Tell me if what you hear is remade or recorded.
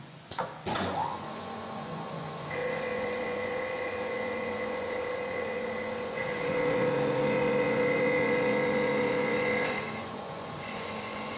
remade